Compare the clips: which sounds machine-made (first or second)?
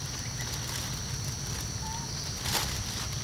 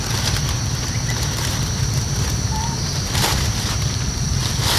second